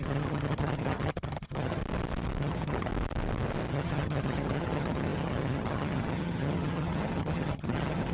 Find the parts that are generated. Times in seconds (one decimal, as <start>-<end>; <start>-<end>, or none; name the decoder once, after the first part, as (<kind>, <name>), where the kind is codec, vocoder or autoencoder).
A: 0.0-1.8 (vocoder, HiFi-GAN); 2.4-2.9; 3.7-8.1